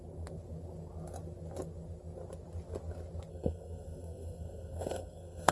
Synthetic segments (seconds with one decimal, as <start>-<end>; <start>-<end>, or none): 3.3-5.5